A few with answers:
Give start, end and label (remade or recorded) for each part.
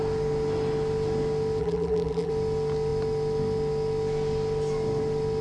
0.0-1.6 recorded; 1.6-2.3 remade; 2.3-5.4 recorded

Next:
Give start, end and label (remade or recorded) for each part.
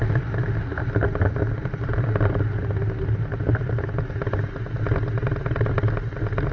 0.0-6.5 recorded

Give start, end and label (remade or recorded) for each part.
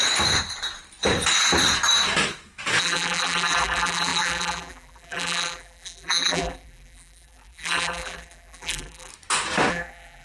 0.0-2.8 recorded; 2.8-9.1 remade; 9.1-9.7 recorded; 9.7-10.2 remade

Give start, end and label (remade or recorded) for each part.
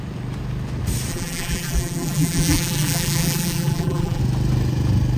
0.0-1.1 recorded; 1.1-4.2 remade; 4.2-5.2 recorded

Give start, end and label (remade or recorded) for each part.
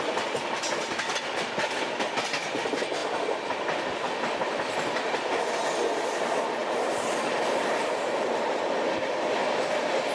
0.0-6.6 recorded; 6.6-8.8 remade; 8.8-10.1 recorded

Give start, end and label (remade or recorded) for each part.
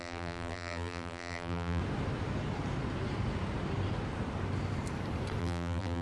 0.0-1.8 remade; 1.8-5.4 recorded; 5.4-6.0 remade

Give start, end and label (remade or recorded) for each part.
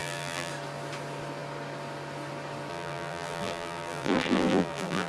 0.0-0.5 remade; 0.5-2.7 recorded; 2.7-5.1 remade